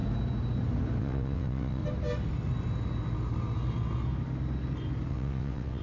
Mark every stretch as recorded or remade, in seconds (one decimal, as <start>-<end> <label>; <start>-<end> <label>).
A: 0.0-1.0 recorded; 1.0-1.8 remade; 1.8-5.1 recorded; 5.1-5.8 remade